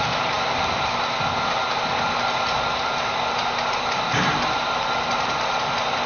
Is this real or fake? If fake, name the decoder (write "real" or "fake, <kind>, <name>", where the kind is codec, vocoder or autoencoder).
real